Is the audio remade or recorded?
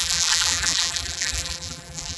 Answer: remade